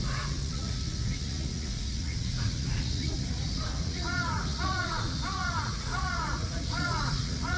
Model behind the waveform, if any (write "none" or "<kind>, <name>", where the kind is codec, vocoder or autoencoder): vocoder, Vocos